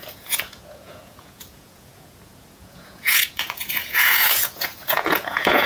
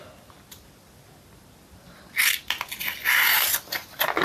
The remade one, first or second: first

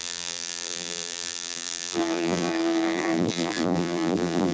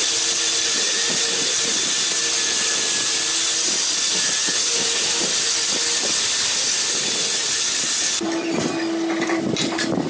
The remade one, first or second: first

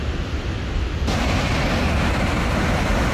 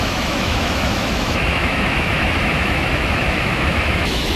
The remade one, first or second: second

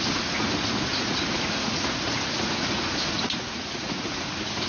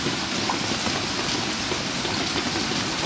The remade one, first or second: first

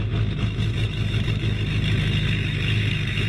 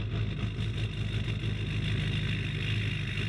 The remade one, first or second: first